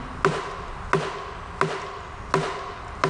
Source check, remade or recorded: recorded